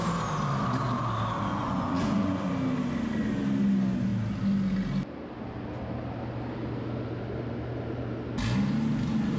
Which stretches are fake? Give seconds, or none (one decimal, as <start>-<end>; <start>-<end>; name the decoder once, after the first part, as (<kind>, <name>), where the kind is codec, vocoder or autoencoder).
1.5-2.4 (vocoder, Vocos)